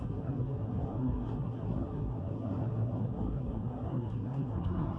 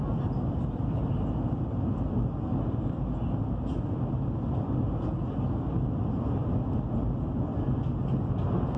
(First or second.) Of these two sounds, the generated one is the first